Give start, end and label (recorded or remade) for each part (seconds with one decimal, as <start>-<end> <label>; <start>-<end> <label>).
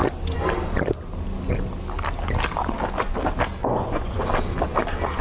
0.0-3.6 recorded; 3.6-4.2 remade; 4.2-5.2 recorded